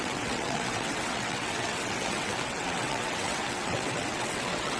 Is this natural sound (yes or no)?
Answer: no